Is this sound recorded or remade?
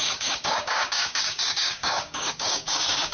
remade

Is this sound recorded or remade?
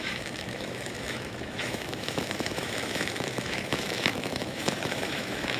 remade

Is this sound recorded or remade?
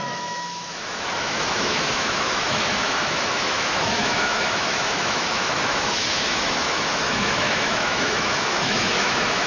remade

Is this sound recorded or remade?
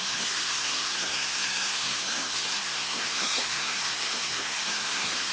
remade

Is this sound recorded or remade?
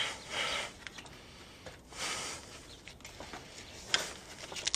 recorded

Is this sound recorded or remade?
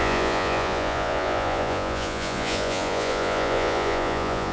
remade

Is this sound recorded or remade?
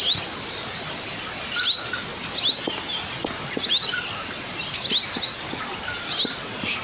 recorded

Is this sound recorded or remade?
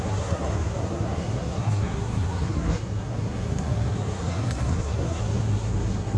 remade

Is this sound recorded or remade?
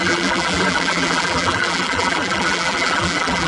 remade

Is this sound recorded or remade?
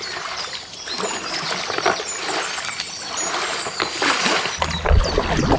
recorded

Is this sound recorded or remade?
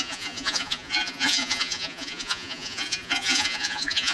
remade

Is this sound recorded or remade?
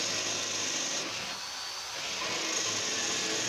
recorded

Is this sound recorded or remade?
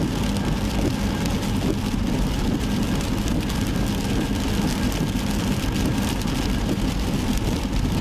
recorded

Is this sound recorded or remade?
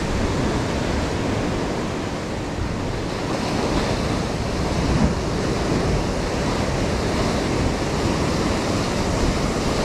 recorded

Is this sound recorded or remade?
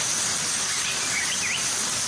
recorded